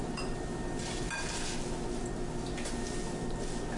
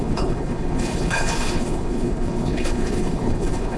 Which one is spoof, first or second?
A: second